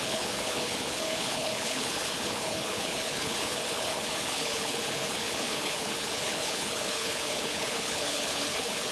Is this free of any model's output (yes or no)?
no